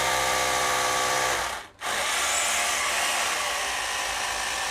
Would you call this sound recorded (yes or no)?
yes